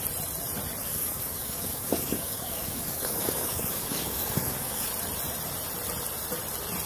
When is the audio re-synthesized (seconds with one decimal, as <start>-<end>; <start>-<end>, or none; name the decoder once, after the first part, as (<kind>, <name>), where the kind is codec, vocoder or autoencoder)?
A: 0.8-4.9 (codec, DAC)